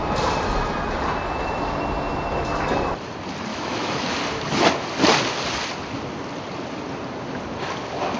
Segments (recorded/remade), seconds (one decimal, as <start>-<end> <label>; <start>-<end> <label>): 0.0-3.5 recorded; 3.5-4.1 remade; 4.1-8.2 recorded

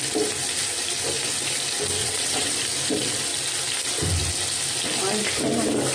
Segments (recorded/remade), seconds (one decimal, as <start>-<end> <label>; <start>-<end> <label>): 0.0-2.0 recorded; 2.0-2.5 remade; 2.5-5.9 recorded

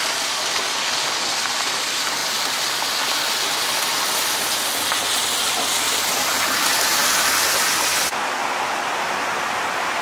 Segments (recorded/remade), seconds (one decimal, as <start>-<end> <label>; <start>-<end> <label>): 0.0-10.0 recorded

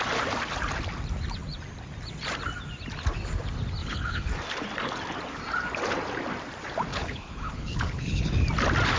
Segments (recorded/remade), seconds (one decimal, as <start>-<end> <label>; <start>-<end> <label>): 0.0-3.8 recorded; 3.8-4.3 remade; 4.3-6.9 recorded; 6.9-8.3 remade; 8.3-9.0 recorded

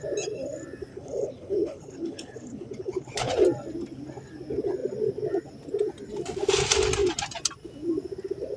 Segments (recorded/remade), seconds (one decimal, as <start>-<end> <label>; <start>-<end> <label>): 0.0-0.9 recorded; 0.9-3.3 remade; 3.3-8.6 recorded